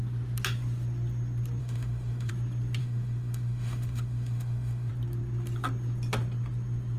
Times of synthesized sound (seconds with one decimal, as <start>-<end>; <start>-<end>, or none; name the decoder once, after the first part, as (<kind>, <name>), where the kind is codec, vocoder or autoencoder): 1.6-2.3 (autoencoder, DAC-VAE); 2.8-4.9